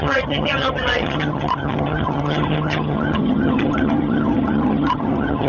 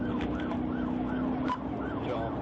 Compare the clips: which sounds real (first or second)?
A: second